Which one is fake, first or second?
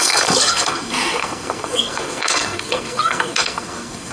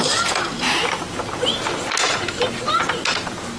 first